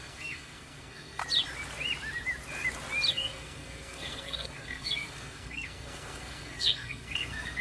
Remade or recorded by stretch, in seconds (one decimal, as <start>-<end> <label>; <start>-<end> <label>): 0.0-1.2 remade; 1.2-3.1 recorded; 3.1-7.6 remade